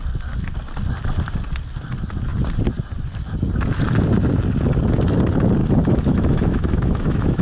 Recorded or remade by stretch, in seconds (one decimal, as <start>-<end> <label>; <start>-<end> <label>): 0.0-5.6 recorded; 5.6-7.4 remade